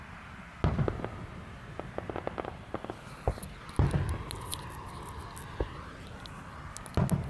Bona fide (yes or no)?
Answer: yes